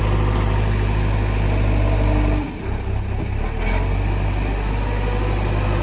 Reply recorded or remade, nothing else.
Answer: recorded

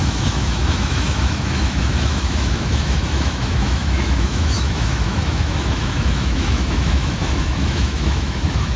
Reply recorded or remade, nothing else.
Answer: remade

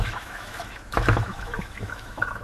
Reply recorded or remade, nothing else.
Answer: remade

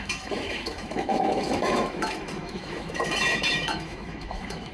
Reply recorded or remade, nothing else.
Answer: remade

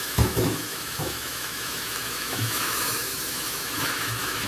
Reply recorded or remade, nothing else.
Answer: remade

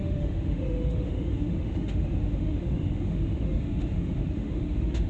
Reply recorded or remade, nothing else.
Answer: remade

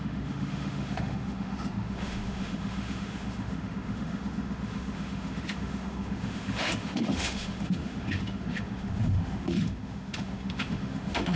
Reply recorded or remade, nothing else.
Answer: remade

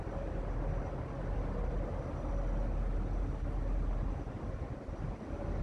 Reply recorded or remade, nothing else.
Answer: recorded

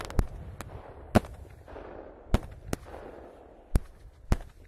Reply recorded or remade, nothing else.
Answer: recorded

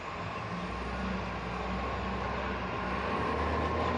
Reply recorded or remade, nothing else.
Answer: recorded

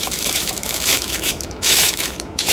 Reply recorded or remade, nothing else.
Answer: remade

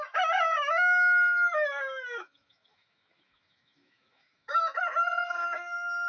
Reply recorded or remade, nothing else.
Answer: remade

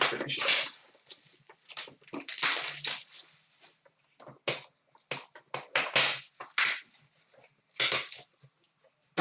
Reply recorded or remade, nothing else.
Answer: recorded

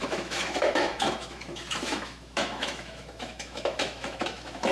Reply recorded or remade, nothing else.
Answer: remade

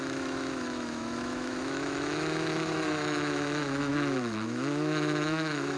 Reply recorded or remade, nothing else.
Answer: remade